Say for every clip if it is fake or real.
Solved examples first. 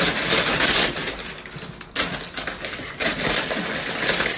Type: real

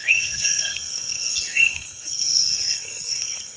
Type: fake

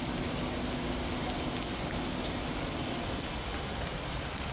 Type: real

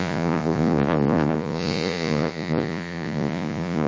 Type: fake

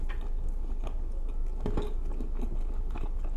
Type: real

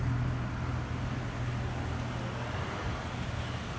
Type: real